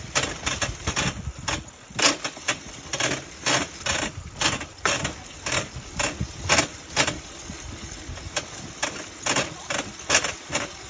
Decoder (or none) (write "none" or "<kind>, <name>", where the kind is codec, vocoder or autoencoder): none